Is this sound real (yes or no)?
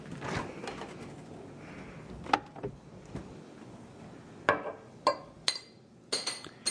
yes